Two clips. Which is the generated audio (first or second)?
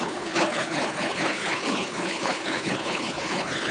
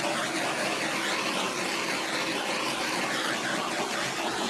first